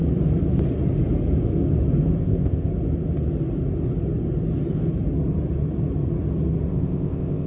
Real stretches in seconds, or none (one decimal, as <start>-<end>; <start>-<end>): 0.0-2.2; 2.7-6.7